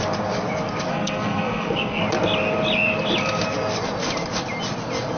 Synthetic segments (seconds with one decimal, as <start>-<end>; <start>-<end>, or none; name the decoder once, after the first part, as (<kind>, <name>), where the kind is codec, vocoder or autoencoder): 0.9-2.0 (codec, SNAC)